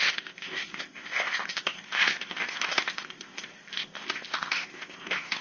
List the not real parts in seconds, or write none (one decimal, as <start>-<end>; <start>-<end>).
0.0-5.4